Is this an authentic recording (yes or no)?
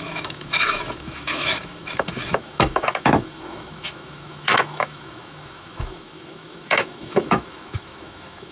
no